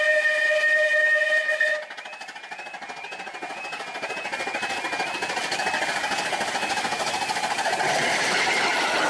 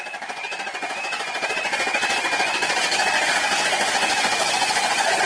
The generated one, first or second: second